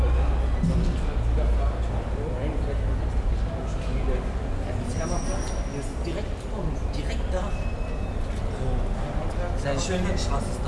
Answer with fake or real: real